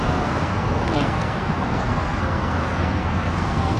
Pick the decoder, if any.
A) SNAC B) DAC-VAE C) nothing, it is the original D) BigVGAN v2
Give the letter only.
A